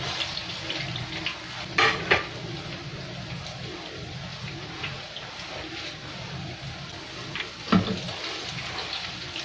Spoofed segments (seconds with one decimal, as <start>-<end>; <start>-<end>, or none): 4.3-5.1